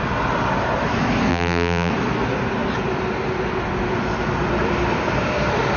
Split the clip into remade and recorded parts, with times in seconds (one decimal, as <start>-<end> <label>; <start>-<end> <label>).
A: 0.0-1.3 recorded; 1.3-1.9 remade; 1.9-5.8 recorded